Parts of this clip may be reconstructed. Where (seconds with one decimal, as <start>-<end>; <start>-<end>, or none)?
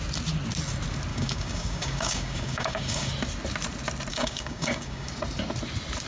1.1-3.1; 4.1-5.1